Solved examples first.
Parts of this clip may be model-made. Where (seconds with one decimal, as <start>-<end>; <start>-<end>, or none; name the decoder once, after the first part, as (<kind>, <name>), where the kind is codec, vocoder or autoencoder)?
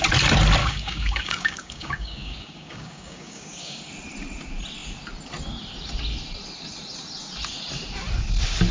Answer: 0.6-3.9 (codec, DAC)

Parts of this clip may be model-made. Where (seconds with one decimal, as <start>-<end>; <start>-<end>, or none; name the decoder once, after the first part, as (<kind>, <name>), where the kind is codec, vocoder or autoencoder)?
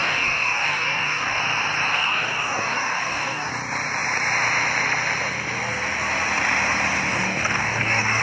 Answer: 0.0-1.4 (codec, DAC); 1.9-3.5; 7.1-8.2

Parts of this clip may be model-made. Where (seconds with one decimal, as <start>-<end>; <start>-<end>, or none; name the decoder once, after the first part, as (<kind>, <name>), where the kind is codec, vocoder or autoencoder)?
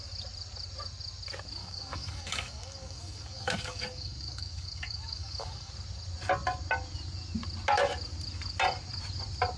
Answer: 1.6-5.7 (codec, DAC)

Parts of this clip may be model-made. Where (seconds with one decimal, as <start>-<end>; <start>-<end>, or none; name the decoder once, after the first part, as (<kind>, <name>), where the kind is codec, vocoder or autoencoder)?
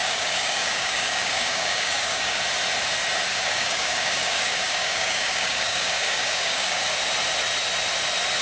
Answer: 0.0-2.4 (codec, DAC); 3.3-6.8